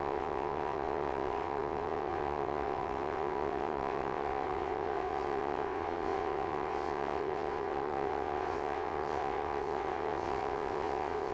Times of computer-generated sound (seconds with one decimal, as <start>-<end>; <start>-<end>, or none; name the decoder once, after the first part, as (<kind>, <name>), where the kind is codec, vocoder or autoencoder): 0.0-11.3 (vocoder, WaveNeXt)